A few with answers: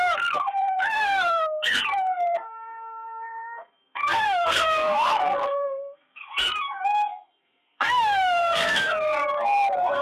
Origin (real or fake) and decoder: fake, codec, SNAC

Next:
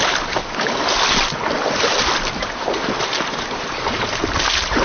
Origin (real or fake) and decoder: real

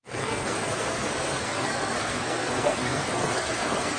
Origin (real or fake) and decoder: fake, codec, SNAC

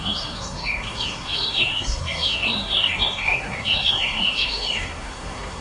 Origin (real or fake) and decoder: fake, codec, SNAC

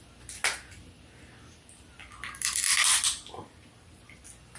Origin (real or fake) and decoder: real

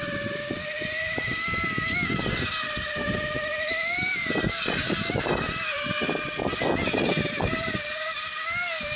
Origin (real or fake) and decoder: real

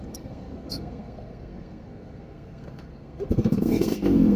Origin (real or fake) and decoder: fake, codec, SNAC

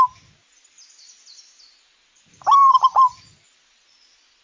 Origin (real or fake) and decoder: real